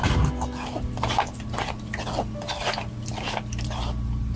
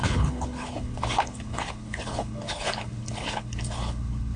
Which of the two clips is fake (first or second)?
second